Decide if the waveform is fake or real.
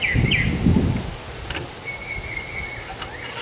real